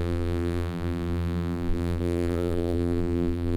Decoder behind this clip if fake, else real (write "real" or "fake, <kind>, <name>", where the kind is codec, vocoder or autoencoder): fake, vocoder, BigVGAN v2